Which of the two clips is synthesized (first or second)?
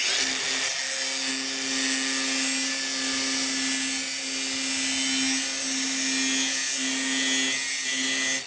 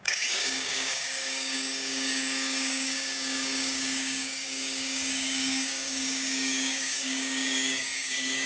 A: second